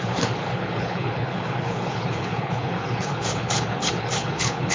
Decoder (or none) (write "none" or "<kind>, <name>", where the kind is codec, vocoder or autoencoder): codec, HILCodec